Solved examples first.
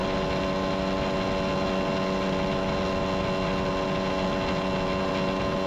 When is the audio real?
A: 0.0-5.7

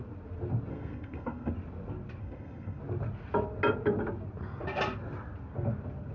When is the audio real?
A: 0.0-0.7; 1.5-2.2; 2.8-6.1

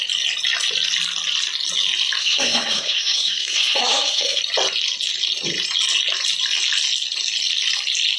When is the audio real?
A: 0.0-2.2; 4.4-8.2